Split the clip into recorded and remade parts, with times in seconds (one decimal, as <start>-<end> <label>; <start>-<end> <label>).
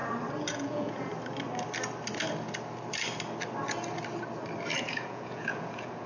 0.0-0.5 recorded; 0.5-1.1 remade; 1.1-4.8 recorded; 4.8-6.1 remade